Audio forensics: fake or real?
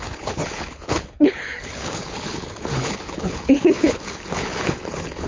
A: fake